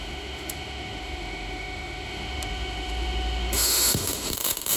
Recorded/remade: remade